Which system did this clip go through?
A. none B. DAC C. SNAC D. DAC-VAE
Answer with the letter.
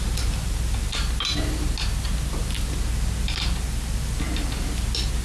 A